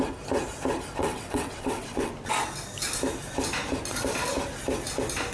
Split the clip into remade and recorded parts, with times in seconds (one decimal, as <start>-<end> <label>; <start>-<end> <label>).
0.0-1.0 recorded; 1.0-2.1 remade; 2.1-5.3 recorded